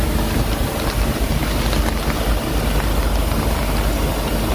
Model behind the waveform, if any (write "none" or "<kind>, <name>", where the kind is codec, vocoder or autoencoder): none